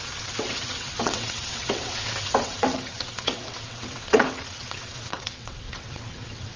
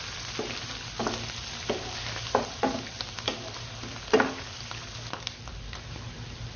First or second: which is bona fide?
second